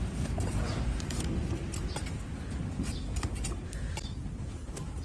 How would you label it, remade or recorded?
remade